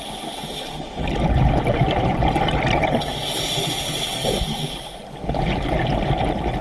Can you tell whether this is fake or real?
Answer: real